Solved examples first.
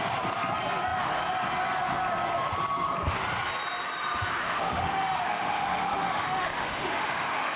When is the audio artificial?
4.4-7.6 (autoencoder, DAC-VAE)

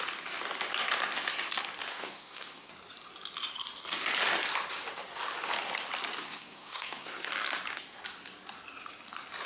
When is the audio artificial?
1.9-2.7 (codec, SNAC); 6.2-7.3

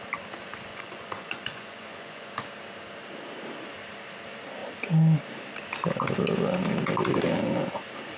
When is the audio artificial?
0.7-2.3 (vocoder, Vocos)

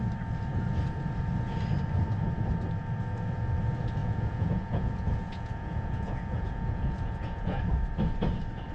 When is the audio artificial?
4.0-7.6 (vocoder, Vocos)

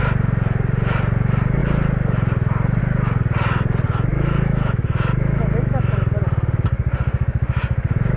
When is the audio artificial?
4.1-6.0 (autoencoder, DAC-VAE)